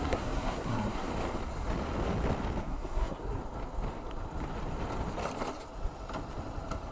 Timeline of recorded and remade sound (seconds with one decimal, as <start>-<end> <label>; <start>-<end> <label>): 0.0-1.1 remade; 1.1-2.6 recorded; 2.6-3.4 remade; 3.4-6.9 recorded